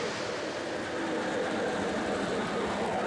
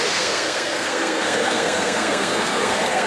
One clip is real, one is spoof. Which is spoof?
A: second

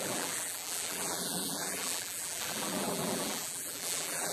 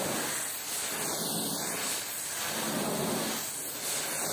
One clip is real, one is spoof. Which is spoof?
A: first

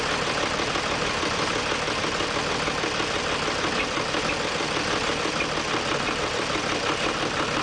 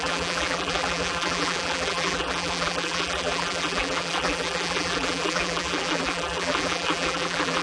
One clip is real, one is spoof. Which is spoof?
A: second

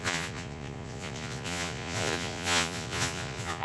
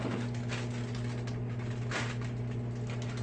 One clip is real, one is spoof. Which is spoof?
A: first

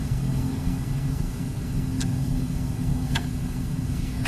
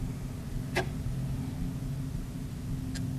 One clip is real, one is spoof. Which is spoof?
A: first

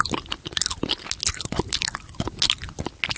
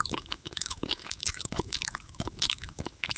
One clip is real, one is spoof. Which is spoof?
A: second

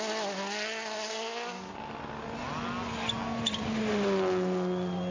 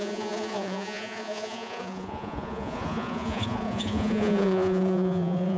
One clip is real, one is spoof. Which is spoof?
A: second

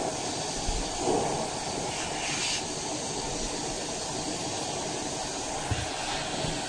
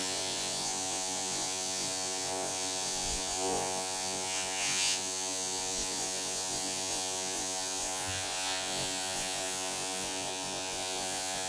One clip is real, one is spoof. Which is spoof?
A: second